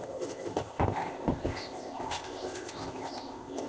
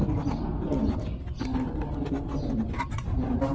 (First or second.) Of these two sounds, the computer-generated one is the first